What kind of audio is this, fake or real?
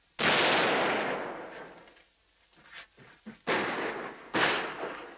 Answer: real